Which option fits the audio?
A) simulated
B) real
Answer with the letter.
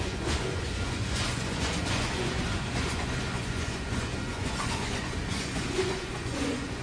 A